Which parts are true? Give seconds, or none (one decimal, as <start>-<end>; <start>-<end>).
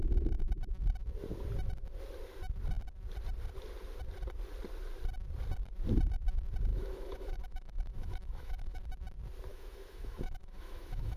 0.0-6.7; 8.8-9.5